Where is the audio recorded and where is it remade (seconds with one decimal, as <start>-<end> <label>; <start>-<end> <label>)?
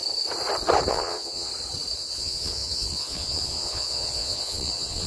0.0-0.9 recorded; 0.9-1.5 remade; 1.5-2.0 recorded; 2.0-5.1 remade